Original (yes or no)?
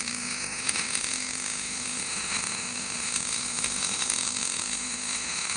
no